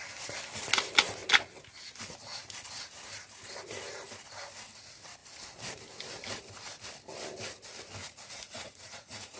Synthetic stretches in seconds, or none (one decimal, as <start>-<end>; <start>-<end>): 8.0-9.4